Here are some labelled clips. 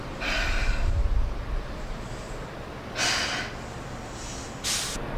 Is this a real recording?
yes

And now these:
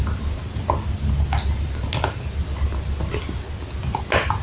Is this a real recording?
yes